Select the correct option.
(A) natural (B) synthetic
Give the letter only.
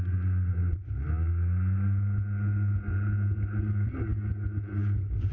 A